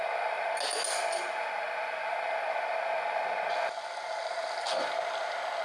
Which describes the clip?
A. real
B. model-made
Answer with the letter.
A